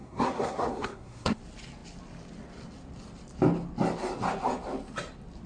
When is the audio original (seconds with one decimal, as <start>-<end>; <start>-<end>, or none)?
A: 1.4-5.5